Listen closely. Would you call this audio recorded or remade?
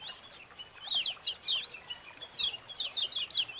recorded